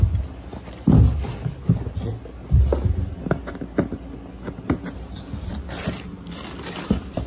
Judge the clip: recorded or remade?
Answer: recorded